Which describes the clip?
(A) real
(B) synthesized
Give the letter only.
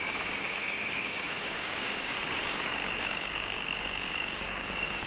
B